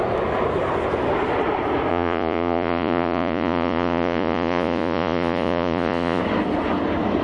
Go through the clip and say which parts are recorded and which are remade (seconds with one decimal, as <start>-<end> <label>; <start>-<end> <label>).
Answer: 0.0-1.9 recorded; 1.9-6.2 remade; 6.2-7.2 recorded